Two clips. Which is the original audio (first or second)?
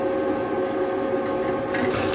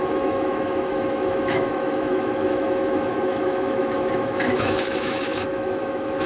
first